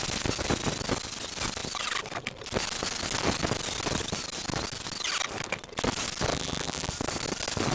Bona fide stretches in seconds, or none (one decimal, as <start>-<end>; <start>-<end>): 0.0-6.3; 6.9-7.7